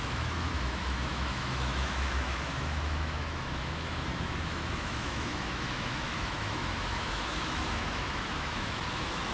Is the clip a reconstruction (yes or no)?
yes